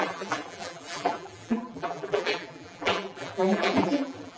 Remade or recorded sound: remade